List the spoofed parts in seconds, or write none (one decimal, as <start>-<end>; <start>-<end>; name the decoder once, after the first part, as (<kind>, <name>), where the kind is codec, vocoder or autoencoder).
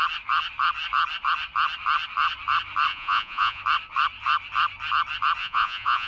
2.9-3.6 (vocoder, Vocos); 5.4-6.1